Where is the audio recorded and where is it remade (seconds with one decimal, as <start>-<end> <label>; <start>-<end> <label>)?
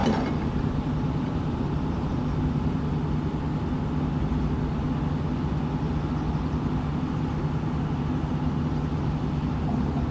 0.0-2.8 remade; 2.8-10.1 recorded